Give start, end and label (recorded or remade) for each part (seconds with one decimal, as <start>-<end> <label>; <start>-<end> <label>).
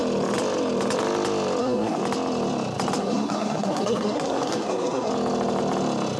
0.0-1.6 recorded; 1.6-2.0 remade; 2.0-3.0 recorded; 3.0-5.1 remade; 5.1-6.2 recorded